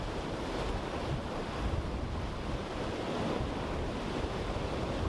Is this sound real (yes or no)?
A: yes